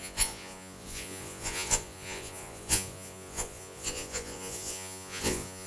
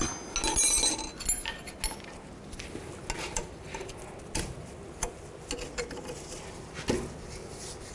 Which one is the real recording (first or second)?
second